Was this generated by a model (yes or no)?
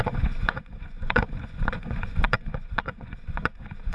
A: yes